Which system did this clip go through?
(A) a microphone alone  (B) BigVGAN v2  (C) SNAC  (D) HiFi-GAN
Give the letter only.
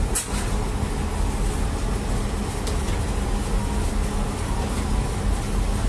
A